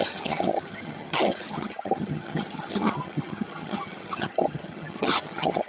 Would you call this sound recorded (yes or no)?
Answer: no